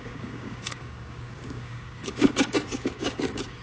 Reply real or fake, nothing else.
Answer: fake